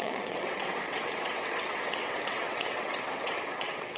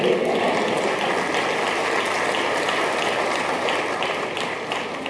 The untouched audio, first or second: second